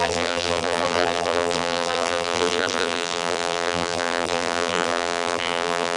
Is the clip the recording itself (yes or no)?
no